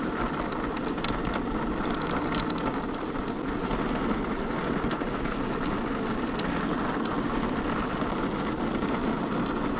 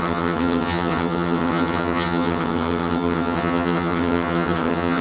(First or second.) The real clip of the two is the first